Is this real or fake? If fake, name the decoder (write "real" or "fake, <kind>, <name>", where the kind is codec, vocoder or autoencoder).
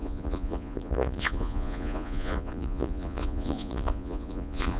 fake, vocoder, Vocos